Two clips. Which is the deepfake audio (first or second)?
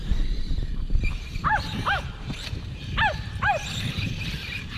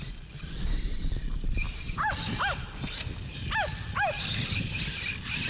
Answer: first